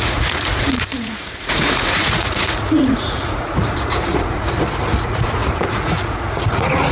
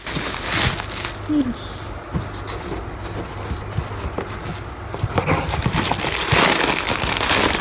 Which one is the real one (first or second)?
second